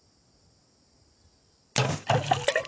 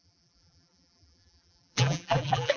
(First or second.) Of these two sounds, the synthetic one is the second